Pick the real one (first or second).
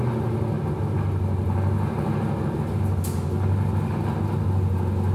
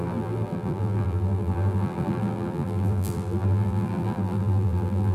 first